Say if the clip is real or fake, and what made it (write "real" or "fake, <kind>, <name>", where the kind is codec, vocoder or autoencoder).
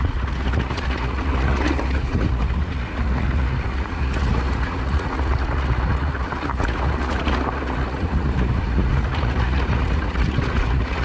fake, vocoder, Vocos